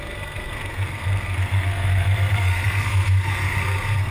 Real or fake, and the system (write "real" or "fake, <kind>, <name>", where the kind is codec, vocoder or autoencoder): fake, codec, SNAC